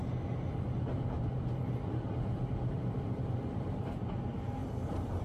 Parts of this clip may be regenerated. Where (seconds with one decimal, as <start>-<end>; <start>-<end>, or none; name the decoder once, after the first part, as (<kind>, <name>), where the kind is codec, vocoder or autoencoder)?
2.7-5.2 (vocoder, BigVGAN v2)